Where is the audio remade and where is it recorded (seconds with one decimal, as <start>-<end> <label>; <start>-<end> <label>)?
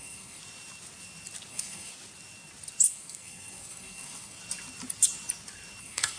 0.0-0.4 remade; 0.4-1.5 recorded; 1.5-1.9 remade; 1.9-2.9 recorded; 2.9-4.4 remade; 4.4-5.8 recorded; 5.8-6.2 remade